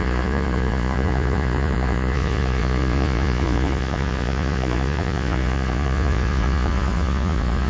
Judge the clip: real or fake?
fake